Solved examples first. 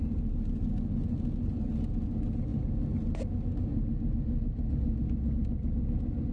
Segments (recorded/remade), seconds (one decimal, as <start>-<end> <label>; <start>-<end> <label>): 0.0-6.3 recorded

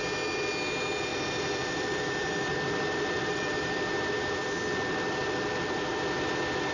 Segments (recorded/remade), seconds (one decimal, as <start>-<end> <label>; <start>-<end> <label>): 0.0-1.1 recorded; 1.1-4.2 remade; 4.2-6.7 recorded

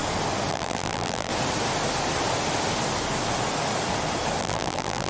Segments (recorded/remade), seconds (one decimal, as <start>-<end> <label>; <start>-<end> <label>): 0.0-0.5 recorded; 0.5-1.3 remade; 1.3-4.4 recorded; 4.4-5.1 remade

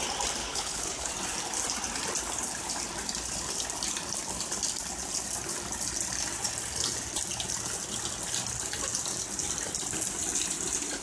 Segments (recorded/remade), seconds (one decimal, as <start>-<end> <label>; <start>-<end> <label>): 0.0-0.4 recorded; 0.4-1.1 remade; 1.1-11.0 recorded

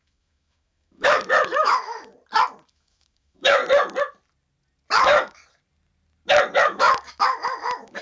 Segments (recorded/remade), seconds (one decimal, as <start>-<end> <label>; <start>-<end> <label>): 0.0-2.1 remade; 2.1-2.7 recorded; 2.7-3.6 remade; 3.6-5.0 recorded; 5.0-5.4 remade; 5.4-6.6 recorded; 6.6-8.0 remade